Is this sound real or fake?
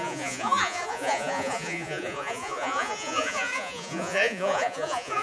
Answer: fake